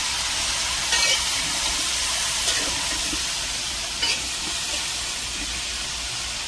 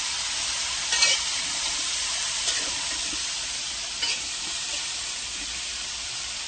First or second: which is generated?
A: second